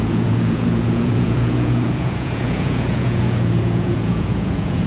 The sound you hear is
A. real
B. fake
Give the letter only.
B